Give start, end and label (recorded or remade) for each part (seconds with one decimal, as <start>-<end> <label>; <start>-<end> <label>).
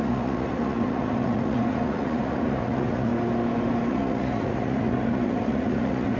0.0-3.1 remade; 3.1-3.9 recorded; 3.9-6.2 remade